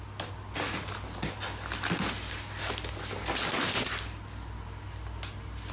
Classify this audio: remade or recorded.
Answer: recorded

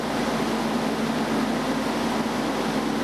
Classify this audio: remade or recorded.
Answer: recorded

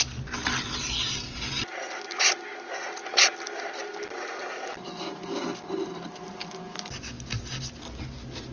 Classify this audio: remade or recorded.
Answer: recorded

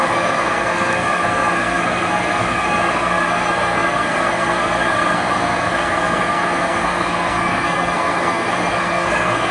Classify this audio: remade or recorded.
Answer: remade